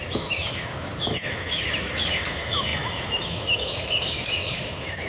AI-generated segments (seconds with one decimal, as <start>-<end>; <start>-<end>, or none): 0.0-5.1